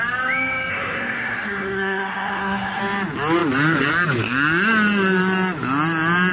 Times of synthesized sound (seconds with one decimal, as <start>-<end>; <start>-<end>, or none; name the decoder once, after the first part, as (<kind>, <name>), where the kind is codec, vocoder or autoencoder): 0.7-2.8 (codec, SNAC)